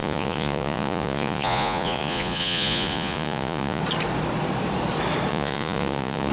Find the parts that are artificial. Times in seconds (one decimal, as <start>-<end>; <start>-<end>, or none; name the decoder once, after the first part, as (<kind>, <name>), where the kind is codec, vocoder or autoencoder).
0.0-3.8 (vocoder, Vocos); 5.3-6.3

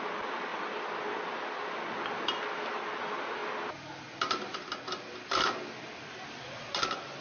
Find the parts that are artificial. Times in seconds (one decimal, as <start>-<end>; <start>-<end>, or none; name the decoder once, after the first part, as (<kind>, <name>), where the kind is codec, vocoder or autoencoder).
none

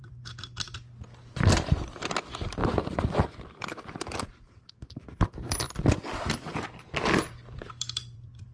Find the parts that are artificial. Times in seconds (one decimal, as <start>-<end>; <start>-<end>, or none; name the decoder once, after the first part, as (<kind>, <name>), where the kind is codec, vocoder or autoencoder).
0.0-8.5 (vocoder, BigVGAN v2)

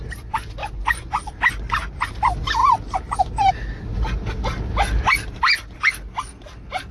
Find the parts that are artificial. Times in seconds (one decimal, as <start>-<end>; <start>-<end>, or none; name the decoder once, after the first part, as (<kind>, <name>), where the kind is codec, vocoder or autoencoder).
0.6-1.3 (vocoder, Vocos)

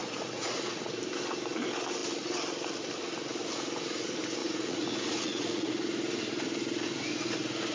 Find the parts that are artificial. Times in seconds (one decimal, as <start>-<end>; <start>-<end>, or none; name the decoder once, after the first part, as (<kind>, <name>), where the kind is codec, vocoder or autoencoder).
0.0-0.9 (vocoder, Vocos); 4.4-5.7